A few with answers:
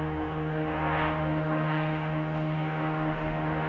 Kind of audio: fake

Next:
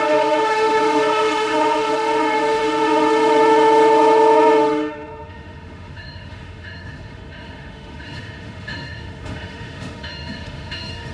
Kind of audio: fake